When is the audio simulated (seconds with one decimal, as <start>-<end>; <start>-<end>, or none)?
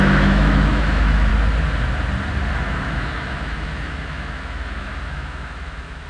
0.0-1.3; 2.5-6.1